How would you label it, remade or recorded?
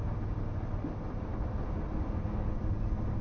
recorded